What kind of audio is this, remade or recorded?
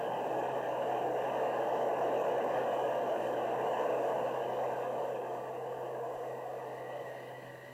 remade